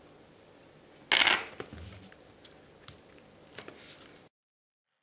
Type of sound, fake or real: real